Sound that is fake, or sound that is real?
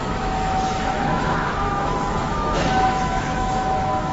fake